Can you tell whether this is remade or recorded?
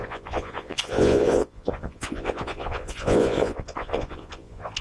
remade